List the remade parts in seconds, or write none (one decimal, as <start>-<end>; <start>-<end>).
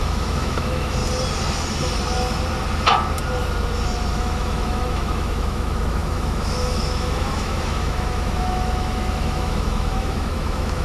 0.0-1.0; 4.1-10.8